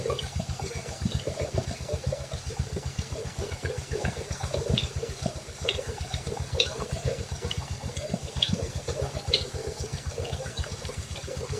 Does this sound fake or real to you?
fake